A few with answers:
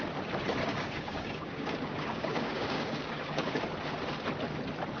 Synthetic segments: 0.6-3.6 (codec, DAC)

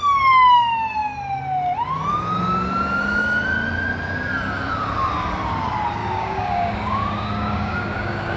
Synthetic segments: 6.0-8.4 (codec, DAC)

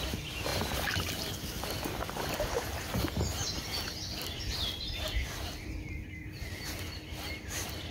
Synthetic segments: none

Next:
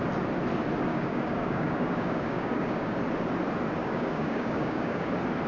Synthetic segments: 0.9-3.0 (codec, DAC); 3.8-5.1